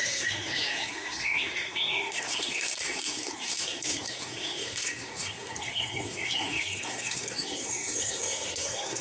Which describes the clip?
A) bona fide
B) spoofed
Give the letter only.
B